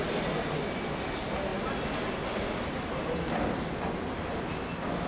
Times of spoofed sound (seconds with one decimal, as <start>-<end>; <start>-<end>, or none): none